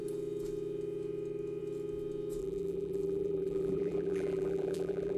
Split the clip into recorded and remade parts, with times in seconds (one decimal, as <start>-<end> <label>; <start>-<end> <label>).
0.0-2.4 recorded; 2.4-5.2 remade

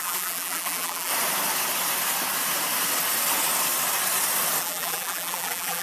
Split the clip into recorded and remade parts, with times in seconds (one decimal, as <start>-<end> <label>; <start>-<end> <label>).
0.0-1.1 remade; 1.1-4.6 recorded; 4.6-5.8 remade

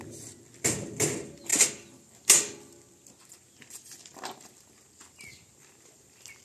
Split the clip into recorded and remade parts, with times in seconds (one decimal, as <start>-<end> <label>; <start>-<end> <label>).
0.0-6.4 recorded